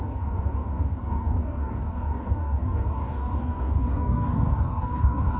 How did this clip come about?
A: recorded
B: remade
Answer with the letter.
B